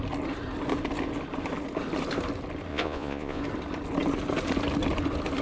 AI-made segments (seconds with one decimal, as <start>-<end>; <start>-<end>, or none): 2.7-3.4

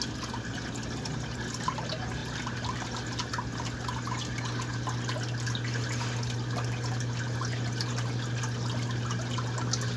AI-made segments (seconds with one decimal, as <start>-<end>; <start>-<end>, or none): none

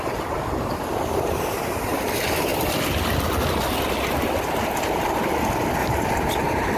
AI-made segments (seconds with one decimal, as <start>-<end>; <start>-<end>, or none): 5.8-6.8